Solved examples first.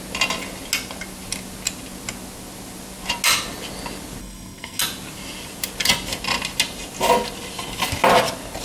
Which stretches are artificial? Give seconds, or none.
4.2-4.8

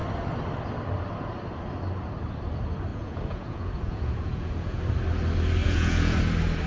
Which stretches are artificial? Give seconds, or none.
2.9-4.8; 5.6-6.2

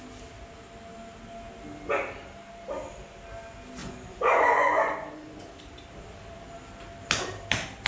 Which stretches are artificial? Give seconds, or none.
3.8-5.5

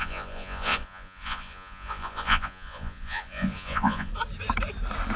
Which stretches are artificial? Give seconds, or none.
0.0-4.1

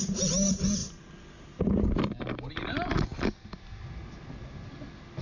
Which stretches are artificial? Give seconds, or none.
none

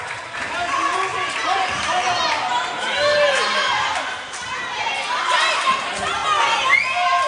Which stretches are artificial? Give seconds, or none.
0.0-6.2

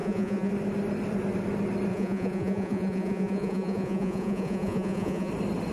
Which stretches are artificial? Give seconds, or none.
0.0-0.5; 1.9-5.3

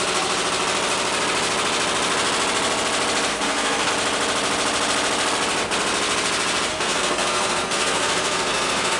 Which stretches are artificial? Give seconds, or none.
3.3-3.9; 6.7-9.0